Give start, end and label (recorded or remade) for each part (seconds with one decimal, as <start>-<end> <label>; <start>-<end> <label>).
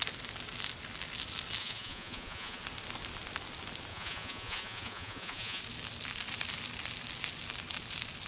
0.0-1.6 recorded; 1.6-2.6 remade; 2.6-3.9 recorded; 3.9-5.6 remade; 5.6-8.3 recorded